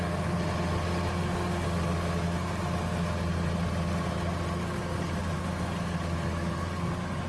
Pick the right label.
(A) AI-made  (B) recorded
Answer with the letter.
B